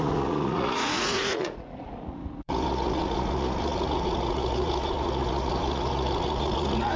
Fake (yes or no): yes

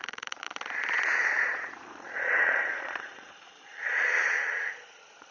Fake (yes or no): yes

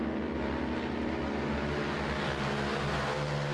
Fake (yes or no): no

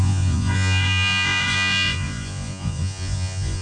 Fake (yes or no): yes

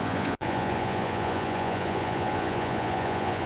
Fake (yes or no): yes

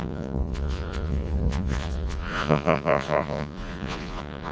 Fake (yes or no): yes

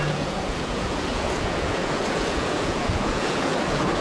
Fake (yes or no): yes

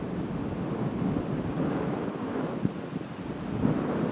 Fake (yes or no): no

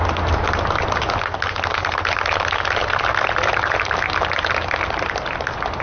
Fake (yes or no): no